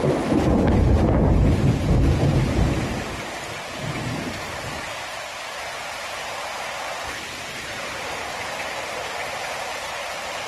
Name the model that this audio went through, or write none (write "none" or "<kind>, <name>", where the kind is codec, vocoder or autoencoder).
vocoder, BigVGAN v2